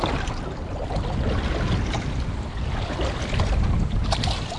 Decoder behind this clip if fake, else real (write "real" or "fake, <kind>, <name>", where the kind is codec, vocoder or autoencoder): real